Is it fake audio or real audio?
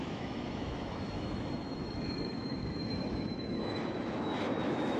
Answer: fake